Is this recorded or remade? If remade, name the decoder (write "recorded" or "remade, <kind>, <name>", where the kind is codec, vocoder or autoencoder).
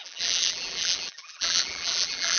remade, vocoder, BigVGAN v2